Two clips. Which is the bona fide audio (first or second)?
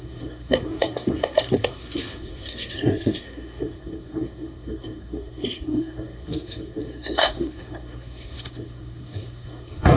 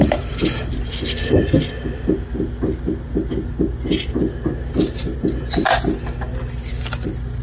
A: second